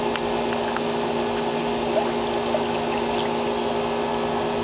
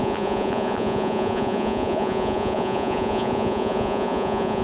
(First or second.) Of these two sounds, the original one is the first